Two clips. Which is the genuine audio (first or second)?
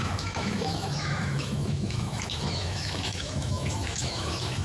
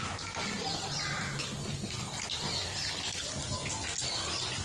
second